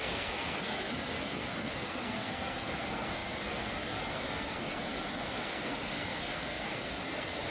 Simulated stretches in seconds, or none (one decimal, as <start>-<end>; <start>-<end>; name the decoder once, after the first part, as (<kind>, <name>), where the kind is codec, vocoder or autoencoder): 0.0-7.5 (codec, SNAC)